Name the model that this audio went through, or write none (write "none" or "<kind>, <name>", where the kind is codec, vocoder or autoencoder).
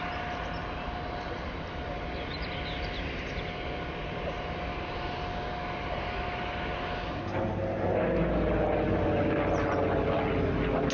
none